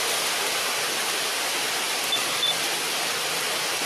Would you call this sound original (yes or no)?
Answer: yes